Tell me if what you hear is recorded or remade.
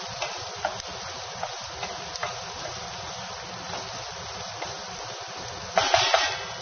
recorded